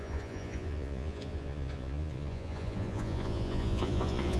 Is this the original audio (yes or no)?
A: no